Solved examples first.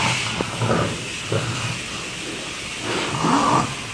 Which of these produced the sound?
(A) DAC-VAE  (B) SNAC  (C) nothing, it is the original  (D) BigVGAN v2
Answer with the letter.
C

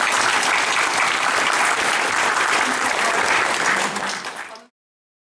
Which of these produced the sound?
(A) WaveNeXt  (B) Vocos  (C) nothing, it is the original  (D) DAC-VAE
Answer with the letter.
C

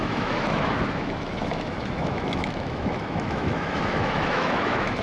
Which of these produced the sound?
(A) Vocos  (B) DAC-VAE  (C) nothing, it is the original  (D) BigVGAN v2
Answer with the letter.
B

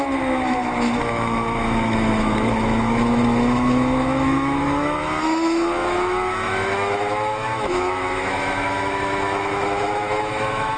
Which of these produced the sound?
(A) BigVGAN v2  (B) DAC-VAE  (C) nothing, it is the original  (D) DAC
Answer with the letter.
B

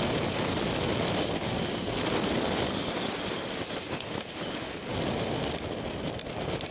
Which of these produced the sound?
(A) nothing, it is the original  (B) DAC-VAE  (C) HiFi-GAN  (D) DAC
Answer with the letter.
A